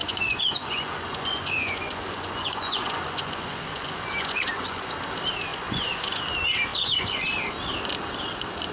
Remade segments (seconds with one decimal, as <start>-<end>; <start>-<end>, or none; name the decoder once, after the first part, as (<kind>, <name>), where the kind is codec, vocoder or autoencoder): 0.0-4.9 (vocoder, Vocos); 5.5-6.2; 6.7-7.2